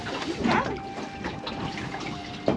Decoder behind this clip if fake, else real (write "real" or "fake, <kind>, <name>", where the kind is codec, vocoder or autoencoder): real